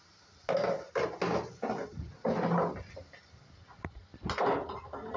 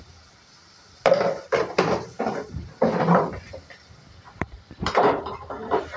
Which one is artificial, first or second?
second